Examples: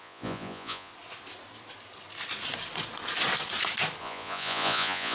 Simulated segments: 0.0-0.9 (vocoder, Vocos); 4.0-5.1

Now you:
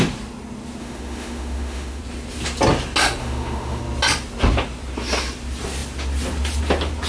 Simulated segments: 0.8-2.0 (autoencoder, DAC-VAE); 3.2-3.8